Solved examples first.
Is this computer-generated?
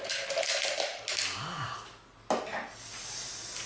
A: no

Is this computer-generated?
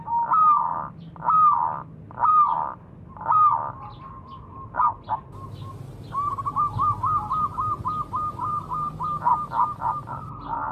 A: no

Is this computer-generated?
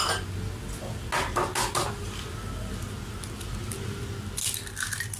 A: no